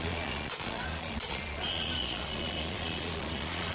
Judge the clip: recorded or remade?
remade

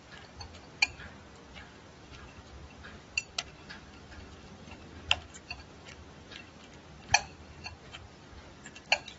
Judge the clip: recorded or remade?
recorded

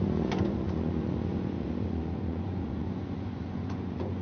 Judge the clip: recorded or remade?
remade